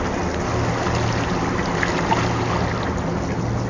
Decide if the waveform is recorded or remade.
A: recorded